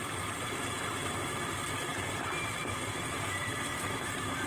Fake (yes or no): yes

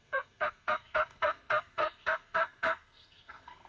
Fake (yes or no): yes